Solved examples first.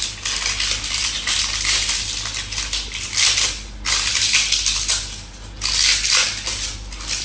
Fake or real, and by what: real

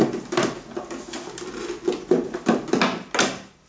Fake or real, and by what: real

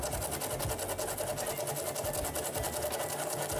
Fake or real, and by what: real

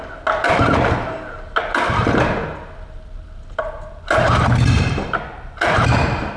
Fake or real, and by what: real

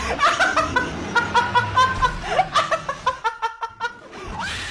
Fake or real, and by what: real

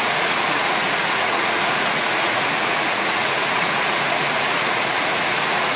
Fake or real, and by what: fake, vocoder, Vocos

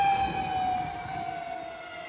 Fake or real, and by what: real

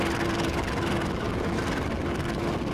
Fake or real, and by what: real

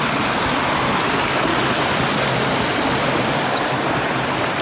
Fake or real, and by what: real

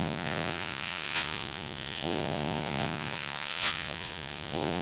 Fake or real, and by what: fake, vocoder, Vocos